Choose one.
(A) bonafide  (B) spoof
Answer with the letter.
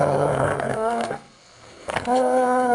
B